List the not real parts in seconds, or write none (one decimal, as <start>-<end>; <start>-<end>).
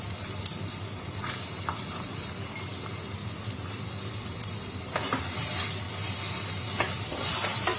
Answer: none